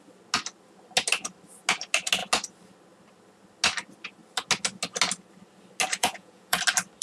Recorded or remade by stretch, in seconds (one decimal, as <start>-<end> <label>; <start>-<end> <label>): 0.0-6.0 recorded; 6.0-6.6 remade; 6.6-7.0 recorded